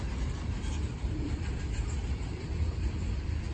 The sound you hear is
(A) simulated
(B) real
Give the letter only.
A